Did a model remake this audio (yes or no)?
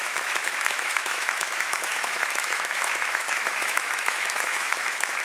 yes